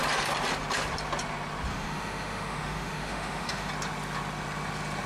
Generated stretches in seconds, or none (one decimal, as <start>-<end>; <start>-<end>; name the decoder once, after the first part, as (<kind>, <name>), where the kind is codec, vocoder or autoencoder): 1.7-3.7 (autoencoder, DAC-VAE)